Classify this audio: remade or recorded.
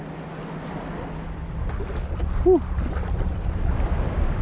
recorded